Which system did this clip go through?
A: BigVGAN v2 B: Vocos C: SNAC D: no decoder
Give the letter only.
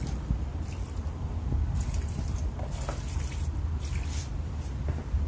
D